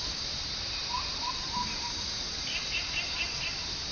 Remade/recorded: remade